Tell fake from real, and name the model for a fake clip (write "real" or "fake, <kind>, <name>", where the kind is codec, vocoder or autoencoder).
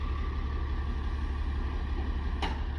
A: real